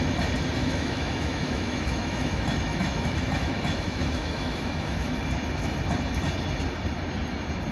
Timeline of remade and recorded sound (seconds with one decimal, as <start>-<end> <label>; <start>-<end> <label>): 0.0-0.6 recorded; 0.6-5.2 remade; 5.2-7.7 recorded